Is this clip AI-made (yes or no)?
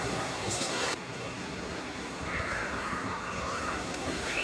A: yes